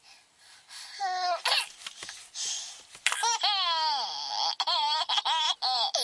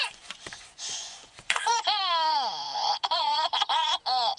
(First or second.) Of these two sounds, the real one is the first